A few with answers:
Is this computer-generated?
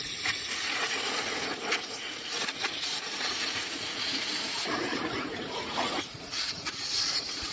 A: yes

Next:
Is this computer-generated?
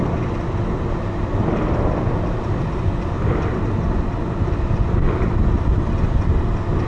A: no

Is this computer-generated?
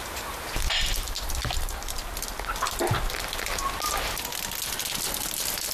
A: no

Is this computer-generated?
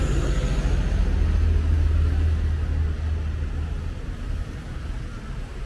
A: no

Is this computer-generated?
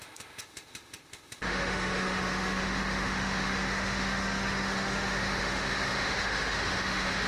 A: yes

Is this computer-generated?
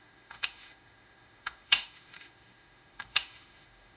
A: yes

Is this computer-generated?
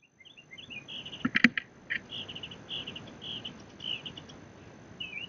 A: no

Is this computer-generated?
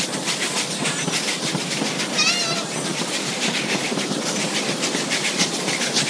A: no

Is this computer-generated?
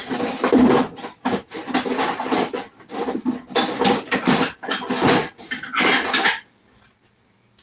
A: no